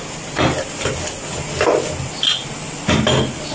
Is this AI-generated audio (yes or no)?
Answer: no